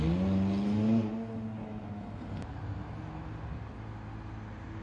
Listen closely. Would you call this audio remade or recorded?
recorded